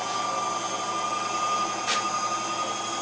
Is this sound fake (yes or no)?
no